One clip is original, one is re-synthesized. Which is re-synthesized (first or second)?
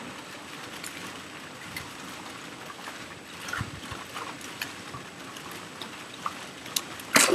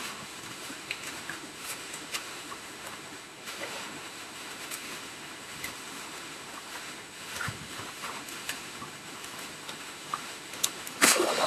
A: second